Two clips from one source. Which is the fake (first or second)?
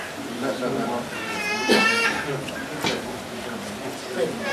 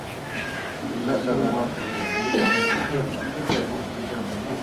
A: second